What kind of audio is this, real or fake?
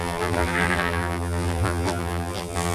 fake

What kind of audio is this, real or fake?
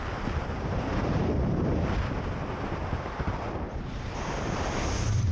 fake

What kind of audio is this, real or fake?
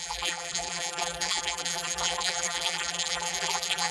fake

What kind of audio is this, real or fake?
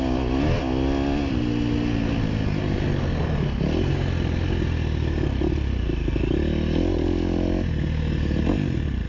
real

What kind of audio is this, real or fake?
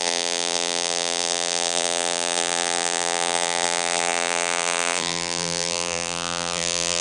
fake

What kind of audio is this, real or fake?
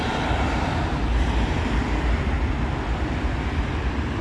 fake